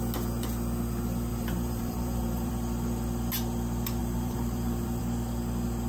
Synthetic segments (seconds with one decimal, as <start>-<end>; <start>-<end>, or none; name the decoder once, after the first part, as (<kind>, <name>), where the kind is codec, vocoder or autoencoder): 1.3-2.5 (vocoder, BigVGAN v2); 4.0-5.0